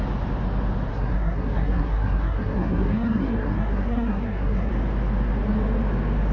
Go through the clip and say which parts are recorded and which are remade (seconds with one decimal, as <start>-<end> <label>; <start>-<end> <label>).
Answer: 0.0-0.9 recorded; 0.9-4.7 remade; 4.7-6.3 recorded